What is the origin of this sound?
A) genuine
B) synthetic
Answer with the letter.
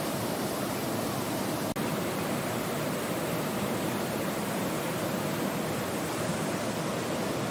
A